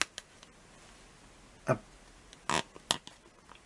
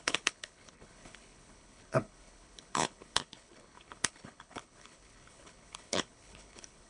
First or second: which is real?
first